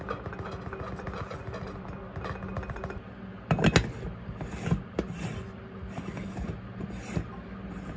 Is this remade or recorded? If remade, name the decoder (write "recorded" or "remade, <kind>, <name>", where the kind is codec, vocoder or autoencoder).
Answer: recorded